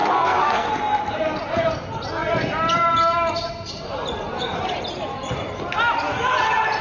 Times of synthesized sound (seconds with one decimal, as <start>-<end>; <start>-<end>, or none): 0.0-0.7